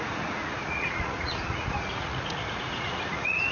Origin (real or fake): fake